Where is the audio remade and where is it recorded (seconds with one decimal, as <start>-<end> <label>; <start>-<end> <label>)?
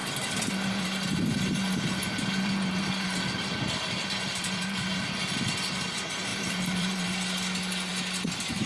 0.0-5.0 remade; 5.0-6.3 recorded; 6.3-7.1 remade; 7.1-8.7 recorded